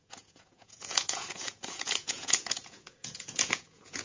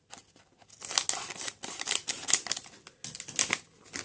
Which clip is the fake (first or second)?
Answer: first